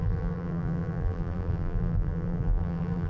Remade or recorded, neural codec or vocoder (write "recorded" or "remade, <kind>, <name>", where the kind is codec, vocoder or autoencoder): remade, vocoder, BigVGAN v2